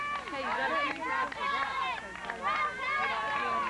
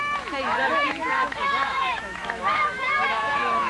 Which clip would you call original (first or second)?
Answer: first